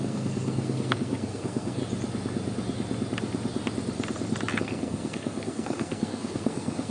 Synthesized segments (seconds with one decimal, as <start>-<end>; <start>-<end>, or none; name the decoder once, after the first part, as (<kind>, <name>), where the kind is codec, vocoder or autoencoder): 0.0-1.8 (codec, SNAC); 4.6-6.9